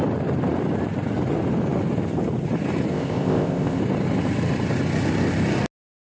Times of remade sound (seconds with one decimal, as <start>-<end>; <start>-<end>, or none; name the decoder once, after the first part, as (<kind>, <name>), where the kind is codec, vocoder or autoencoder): 2.9-3.8 (codec, ZipCodec)